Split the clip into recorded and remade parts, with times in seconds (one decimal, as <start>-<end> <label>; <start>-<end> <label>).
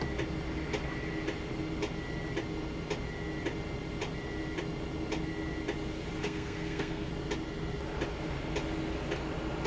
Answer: 0.0-6.2 recorded; 6.2-7.1 remade; 7.1-9.7 recorded